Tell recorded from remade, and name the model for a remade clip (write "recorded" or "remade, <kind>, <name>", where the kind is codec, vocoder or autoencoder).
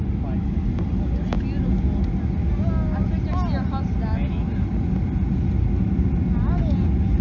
recorded